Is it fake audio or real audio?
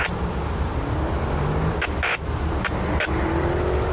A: real